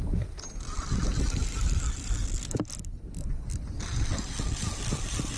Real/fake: real